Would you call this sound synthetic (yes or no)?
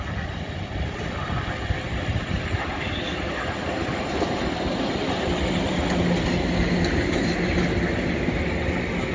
no